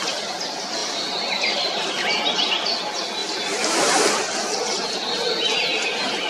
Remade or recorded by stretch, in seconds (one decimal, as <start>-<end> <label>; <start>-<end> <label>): 0.0-0.8 recorded; 0.8-2.2 remade; 2.2-3.2 recorded; 3.2-4.1 remade; 4.1-6.3 recorded